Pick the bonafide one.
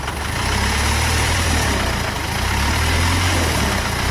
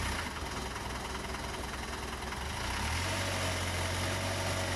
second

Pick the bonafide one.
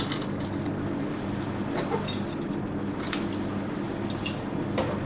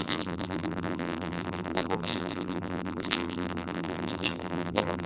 first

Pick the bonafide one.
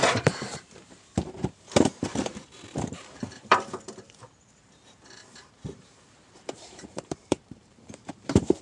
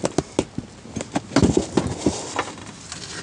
second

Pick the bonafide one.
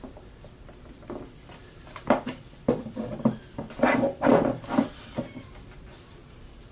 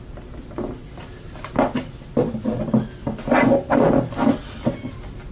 second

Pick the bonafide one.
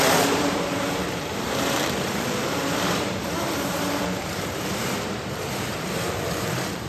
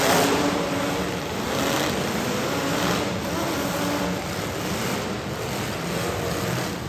second